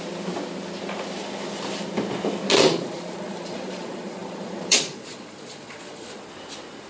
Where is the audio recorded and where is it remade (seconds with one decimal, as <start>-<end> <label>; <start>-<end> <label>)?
0.0-2.5 recorded; 2.5-6.2 remade; 6.2-6.9 recorded